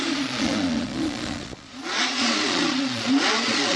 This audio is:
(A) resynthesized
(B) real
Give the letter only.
A